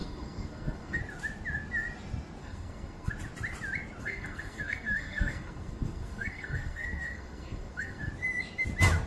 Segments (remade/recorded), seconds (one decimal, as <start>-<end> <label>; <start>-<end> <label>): 0.0-1.0 remade; 1.0-2.4 recorded; 2.4-3.1 remade; 3.1-4.0 recorded; 4.0-8.1 remade; 8.1-9.1 recorded